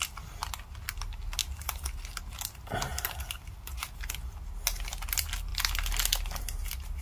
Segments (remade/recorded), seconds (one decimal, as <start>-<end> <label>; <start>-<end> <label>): 0.0-7.0 recorded